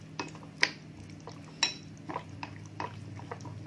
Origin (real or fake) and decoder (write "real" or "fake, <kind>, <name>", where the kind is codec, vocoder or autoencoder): real